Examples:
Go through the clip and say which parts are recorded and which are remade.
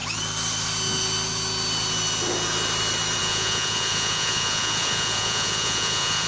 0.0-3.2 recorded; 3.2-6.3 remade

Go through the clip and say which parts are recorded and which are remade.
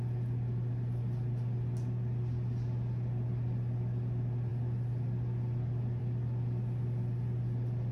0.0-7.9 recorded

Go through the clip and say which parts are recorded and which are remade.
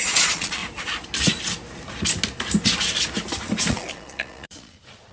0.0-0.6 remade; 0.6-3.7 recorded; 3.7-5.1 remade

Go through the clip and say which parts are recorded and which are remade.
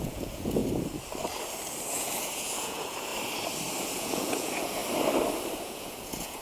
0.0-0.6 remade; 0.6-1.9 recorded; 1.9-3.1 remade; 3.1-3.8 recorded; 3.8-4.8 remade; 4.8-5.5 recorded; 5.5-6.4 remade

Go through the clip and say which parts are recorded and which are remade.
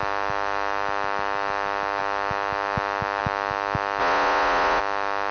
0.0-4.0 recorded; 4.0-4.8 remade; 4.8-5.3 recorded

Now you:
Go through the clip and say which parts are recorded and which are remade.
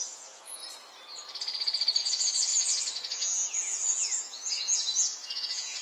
0.0-0.6 remade; 0.6-2.0 recorded; 2.0-5.8 remade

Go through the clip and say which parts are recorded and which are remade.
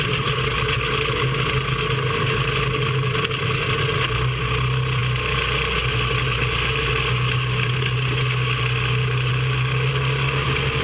0.0-10.8 recorded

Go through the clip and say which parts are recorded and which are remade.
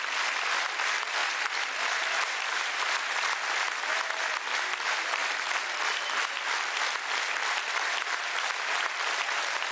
0.0-9.7 recorded